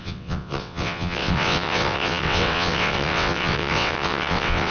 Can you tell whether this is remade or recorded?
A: remade